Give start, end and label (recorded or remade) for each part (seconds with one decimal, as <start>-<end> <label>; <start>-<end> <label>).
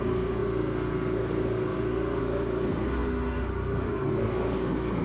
0.0-5.0 remade